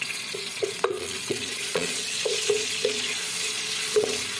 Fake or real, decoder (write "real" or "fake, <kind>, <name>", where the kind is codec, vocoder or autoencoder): fake, vocoder, Vocos